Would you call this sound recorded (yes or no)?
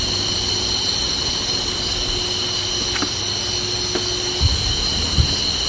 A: yes